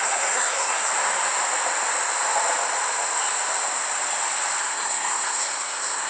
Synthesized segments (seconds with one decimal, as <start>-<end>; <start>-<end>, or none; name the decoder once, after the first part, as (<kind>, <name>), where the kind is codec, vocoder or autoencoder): 0.0-0.9 (codec, SNAC); 4.6-6.1